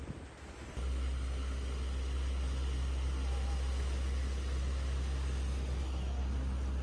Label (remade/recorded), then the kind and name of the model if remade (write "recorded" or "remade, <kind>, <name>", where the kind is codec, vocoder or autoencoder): recorded